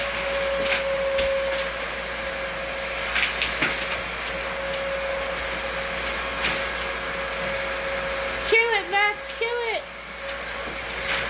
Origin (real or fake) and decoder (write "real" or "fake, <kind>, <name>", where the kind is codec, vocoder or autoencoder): real